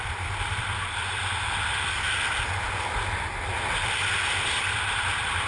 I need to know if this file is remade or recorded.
recorded